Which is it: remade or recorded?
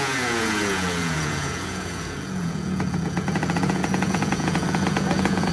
remade